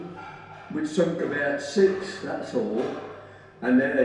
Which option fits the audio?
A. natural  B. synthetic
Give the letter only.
A